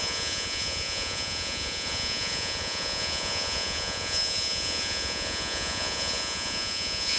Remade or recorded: remade